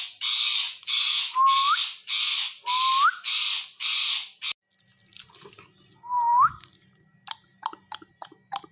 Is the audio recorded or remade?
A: recorded